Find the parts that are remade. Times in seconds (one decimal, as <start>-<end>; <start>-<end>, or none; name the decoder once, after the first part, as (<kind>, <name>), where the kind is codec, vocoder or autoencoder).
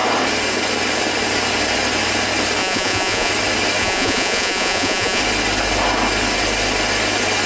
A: 2.6-3.3 (vocoder, Vocos); 3.8-5.2